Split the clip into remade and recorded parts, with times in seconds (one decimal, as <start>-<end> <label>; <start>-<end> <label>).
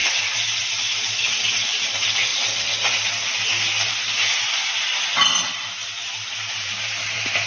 0.0-2.3 remade; 2.3-6.5 recorded; 6.5-7.5 remade